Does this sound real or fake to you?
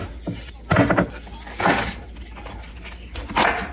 real